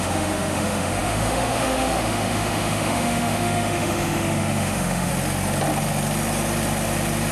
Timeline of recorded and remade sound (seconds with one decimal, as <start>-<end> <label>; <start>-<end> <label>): 0.0-5.1 remade; 5.1-7.3 recorded